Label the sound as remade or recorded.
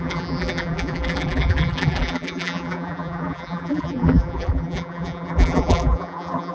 remade